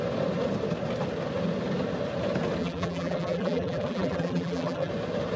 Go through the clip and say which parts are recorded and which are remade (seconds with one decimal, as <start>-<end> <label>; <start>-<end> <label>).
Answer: 0.0-2.6 recorded; 2.6-4.9 remade; 4.9-5.4 recorded